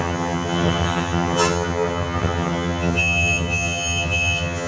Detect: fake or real fake